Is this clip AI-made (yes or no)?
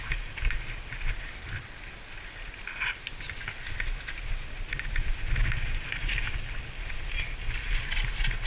no